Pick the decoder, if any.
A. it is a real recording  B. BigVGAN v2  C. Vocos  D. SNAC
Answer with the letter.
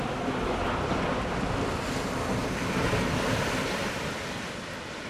A